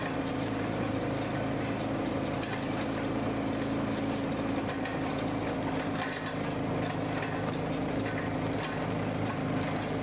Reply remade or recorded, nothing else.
recorded